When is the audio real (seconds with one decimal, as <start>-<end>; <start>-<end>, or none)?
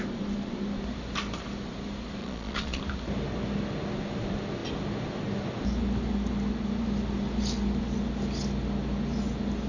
0.0-2.2; 2.8-9.7